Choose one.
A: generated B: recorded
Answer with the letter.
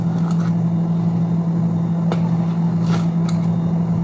B